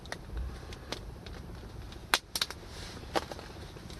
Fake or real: real